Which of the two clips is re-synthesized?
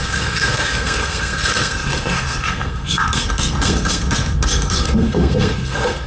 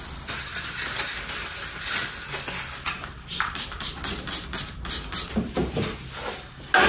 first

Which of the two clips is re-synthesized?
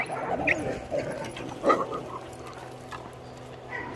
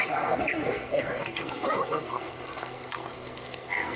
second